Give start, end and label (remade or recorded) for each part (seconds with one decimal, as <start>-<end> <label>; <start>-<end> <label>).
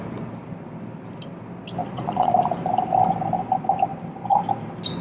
0.0-1.8 recorded; 1.8-2.3 remade; 2.3-5.0 recorded